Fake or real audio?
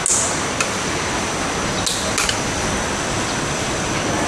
real